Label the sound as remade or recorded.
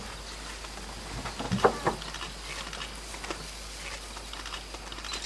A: recorded